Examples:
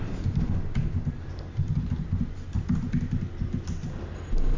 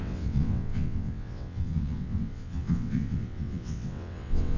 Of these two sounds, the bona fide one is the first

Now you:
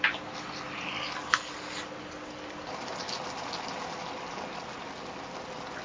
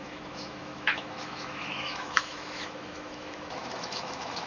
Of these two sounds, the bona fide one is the first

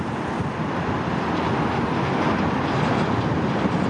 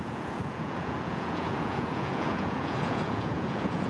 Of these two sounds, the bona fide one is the first